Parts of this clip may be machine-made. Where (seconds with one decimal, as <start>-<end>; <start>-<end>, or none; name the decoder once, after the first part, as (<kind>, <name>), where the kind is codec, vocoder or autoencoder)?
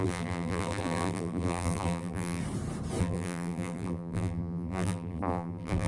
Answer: 0.0-2.4 (vocoder, BigVGAN v2); 3.0-5.9